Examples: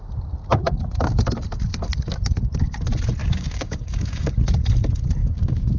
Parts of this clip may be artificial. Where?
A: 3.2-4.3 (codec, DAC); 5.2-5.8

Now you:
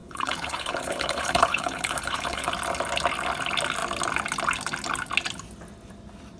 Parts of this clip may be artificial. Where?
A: 0.0-2.5 (codec, HILCodec)

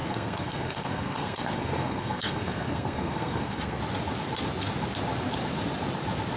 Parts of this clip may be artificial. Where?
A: 0.0-3.8 (codec, SNAC)

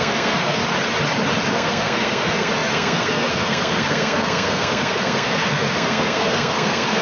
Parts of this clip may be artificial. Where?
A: 0.0-0.6 (codec, SNAC); 1.5-7.0